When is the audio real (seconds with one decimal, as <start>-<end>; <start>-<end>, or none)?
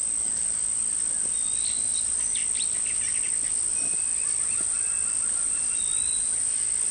0.0-6.9